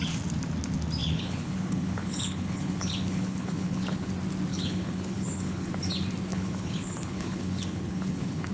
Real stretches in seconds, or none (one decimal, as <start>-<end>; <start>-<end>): 0.0-1.0; 4.1-4.5; 5.7-6.3